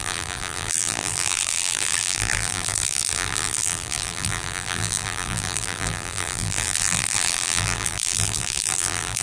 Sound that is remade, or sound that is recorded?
remade